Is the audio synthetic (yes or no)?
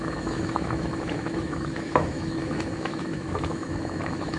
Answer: yes